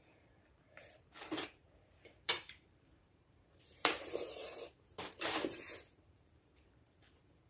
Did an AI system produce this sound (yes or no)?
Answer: yes